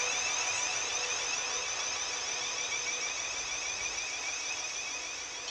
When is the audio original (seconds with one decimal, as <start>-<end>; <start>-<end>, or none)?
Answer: 0.0-5.5